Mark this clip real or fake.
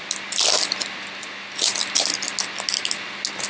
real